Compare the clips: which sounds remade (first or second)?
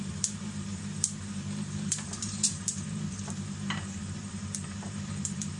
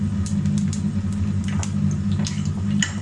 first